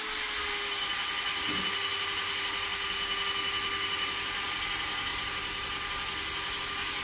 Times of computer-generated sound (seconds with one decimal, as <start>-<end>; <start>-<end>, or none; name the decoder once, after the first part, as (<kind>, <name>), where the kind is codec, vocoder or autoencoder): none